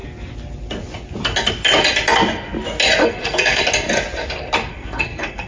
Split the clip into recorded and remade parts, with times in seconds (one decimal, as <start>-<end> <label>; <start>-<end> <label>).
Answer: 0.0-3.0 recorded; 3.0-3.6 remade; 3.6-4.7 recorded; 4.7-5.5 remade